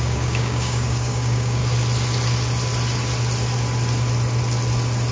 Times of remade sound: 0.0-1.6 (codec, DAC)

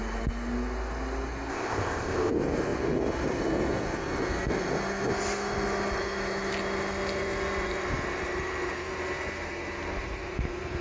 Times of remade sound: 1.5-2.3 (codec, ZipCodec)

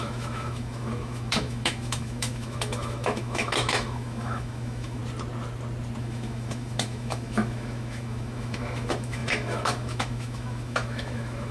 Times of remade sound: 0.0-5.0 (autoencoder, DAC-VAE); 6.0-11.5

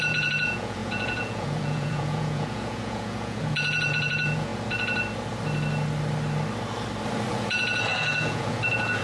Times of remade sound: 0.0-4.5 (vocoder, Vocos); 7.3-9.0

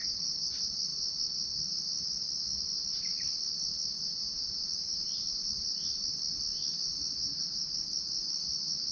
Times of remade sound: 0.0-0.5 (codec, DAC)